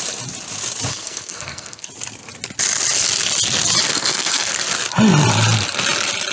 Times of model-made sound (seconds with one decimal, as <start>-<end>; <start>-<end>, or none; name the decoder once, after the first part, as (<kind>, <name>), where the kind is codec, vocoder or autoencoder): 0.9-1.9 (codec, SNAC); 3.9-4.5